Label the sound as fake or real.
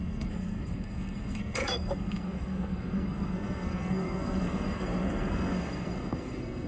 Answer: fake